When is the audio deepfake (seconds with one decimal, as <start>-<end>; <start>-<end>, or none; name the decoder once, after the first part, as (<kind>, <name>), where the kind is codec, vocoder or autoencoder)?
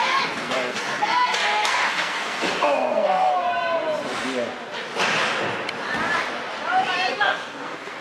0.0-3.5 (codec, SNAC); 7.1-8.0